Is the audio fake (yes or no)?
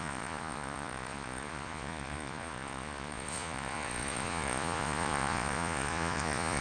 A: yes